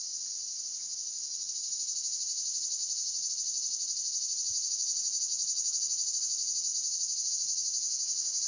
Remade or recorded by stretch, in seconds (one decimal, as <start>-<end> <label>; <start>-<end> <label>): 0.0-8.5 recorded